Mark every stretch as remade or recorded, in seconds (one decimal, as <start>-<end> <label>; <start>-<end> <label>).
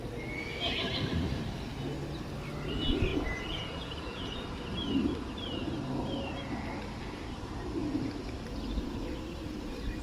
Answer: 0.0-3.1 recorded; 3.1-4.6 remade; 4.6-10.0 recorded